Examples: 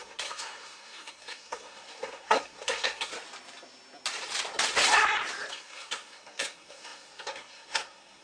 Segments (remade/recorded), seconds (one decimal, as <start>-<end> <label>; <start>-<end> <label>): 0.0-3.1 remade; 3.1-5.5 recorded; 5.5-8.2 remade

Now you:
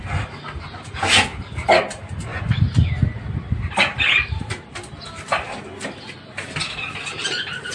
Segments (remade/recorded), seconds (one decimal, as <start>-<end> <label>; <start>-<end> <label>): 0.0-7.7 recorded

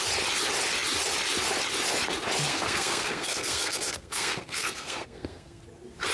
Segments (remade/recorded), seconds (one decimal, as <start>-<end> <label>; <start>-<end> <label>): 0.0-2.5 recorded; 2.5-5.6 remade; 5.6-6.1 recorded

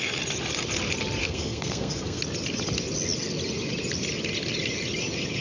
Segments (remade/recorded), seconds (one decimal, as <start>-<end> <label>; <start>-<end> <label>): 0.0-1.2 recorded; 1.2-2.2 remade; 2.2-5.4 recorded

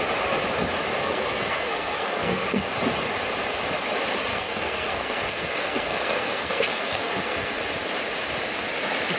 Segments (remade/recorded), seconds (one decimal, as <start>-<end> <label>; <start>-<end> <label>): 0.0-1.0 recorded; 1.0-2.7 remade; 2.7-4.3 recorded; 4.3-7.6 remade; 7.6-9.2 recorded

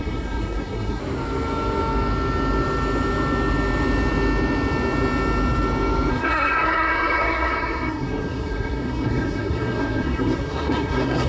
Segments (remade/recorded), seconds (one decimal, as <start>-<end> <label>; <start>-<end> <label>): 0.0-1.0 remade; 1.0-6.1 recorded; 6.1-11.3 remade

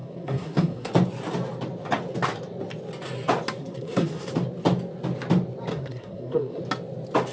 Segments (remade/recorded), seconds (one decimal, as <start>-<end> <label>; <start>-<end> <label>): 0.0-0.9 remade; 0.9-3.6 recorded; 3.6-4.3 remade; 4.3-5.7 recorded; 5.7-6.6 remade; 6.6-7.3 recorded

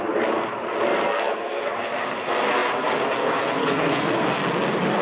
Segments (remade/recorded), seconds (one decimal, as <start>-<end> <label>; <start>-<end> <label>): 0.0-0.9 recorded; 0.9-1.7 remade; 1.7-3.6 recorded; 3.6-4.1 remade; 4.1-5.0 recorded